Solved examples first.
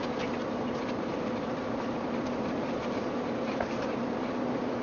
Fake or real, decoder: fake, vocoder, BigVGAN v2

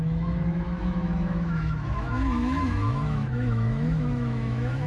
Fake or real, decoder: fake, autoencoder, DAC-VAE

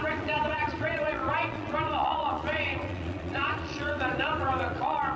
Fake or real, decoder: fake, vocoder, Vocos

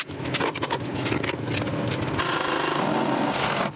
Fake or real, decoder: real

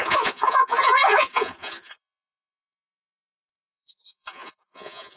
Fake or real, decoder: fake, vocoder, Vocos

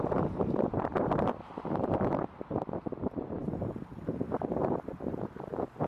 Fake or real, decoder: fake, vocoder, BigVGAN v2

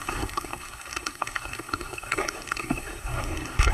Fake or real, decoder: fake, codec, SNAC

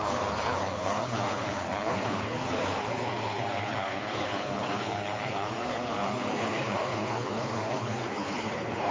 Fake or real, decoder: fake, codec, HILCodec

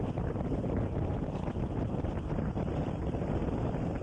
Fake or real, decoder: real